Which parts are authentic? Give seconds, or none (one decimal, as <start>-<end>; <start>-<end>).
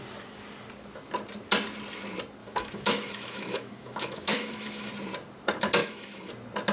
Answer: 0.0-2.4; 4.9-5.8; 6.3-6.7